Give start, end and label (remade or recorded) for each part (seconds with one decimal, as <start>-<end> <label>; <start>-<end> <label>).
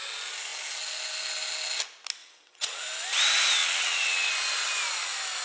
0.0-2.2 recorded; 2.2-2.8 remade; 2.8-3.6 recorded; 3.6-4.3 remade; 4.3-5.4 recorded